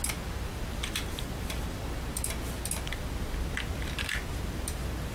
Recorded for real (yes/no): no